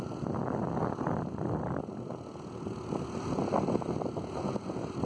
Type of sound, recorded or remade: recorded